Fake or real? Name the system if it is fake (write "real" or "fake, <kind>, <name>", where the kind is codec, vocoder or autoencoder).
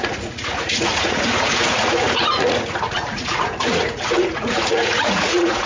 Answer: fake, vocoder, Vocos